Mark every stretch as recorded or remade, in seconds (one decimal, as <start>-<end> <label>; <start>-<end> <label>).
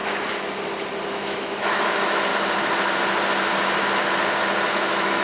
0.0-1.1 recorded; 1.1-2.3 remade; 2.3-4.7 recorded; 4.7-5.2 remade